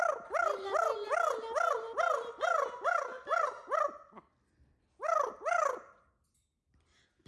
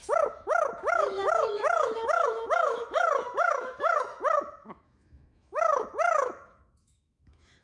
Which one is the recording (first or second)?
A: first